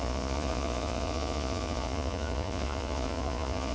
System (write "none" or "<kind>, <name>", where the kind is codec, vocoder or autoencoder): vocoder, Vocos